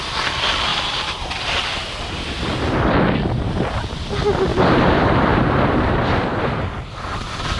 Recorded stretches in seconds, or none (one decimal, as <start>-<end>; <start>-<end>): 0.0-0.7; 1.6-4.5; 6.1-7.6